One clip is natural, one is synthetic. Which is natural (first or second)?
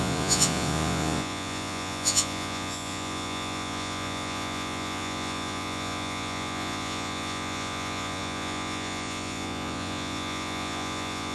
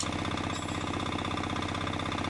second